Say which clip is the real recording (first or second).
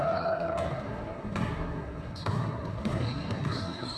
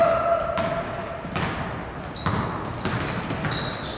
second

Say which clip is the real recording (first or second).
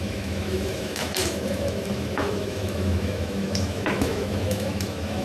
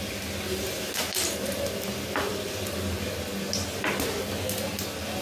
second